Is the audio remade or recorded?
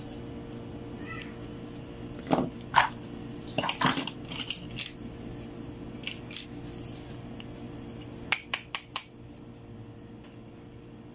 recorded